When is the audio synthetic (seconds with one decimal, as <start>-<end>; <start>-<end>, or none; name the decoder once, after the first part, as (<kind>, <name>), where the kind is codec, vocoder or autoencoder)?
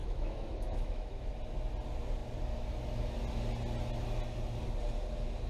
0.0-1.3 (autoencoder, DAC-VAE)